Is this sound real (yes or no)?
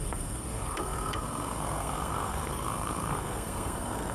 no